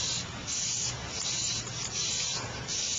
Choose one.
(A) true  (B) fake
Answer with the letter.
B